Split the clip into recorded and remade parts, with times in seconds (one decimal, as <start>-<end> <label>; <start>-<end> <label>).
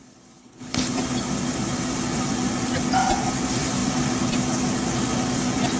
0.0-0.4 recorded; 0.4-0.9 remade; 0.9-5.8 recorded